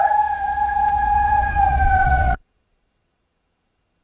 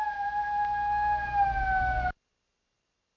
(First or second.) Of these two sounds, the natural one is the second